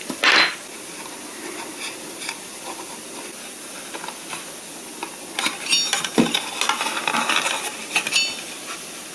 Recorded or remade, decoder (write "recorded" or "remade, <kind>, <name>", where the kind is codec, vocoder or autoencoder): recorded